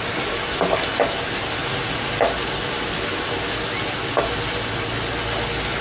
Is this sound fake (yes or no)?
no